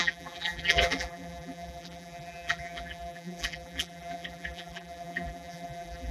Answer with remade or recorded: remade